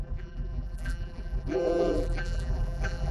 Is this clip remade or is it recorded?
remade